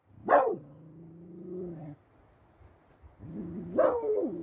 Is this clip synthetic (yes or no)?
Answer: no